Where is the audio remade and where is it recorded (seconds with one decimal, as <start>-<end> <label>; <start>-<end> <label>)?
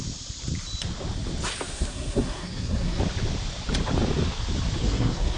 0.0-1.7 recorded; 1.7-3.0 remade; 3.0-4.8 recorded; 4.8-5.4 remade